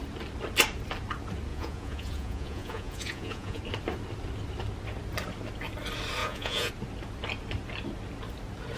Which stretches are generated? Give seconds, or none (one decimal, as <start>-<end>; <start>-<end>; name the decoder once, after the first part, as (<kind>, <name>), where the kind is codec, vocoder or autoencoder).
1.5-3.6 (vocoder, Vocos); 6.2-6.7